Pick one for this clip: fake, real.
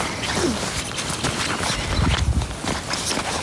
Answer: real